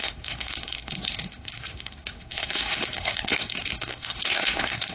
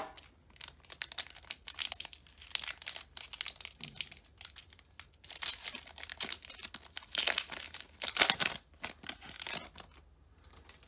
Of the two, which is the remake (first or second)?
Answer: first